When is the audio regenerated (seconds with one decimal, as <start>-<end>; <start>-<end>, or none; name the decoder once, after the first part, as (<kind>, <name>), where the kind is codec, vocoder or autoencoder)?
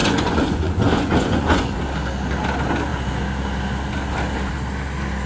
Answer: 0.0-1.8 (vocoder, Vocos)